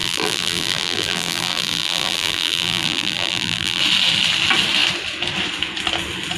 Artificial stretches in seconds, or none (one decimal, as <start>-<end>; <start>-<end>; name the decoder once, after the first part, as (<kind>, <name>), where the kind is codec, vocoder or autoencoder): 0.0-3.8 (vocoder, BigVGAN v2)